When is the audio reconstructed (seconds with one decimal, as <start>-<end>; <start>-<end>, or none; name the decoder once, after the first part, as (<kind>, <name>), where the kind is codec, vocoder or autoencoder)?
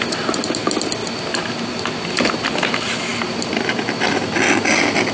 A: none